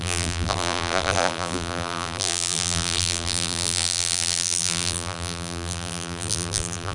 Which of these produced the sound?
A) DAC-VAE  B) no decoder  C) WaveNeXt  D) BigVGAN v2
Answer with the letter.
D